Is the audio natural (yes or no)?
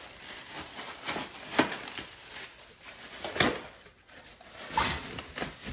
yes